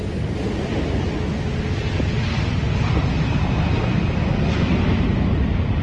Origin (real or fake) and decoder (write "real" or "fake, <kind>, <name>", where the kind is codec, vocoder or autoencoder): real